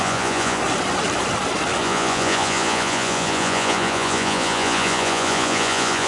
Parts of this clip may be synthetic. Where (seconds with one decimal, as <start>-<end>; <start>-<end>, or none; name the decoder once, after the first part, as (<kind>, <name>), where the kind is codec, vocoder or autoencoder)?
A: 0.0-0.6 (vocoder, Vocos); 1.8-6.1